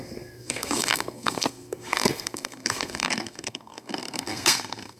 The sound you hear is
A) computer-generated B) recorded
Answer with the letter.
A